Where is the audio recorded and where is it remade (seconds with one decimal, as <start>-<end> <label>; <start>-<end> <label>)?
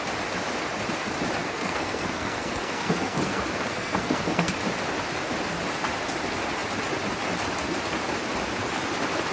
0.0-1.4 recorded; 1.4-4.5 remade; 4.5-9.3 recorded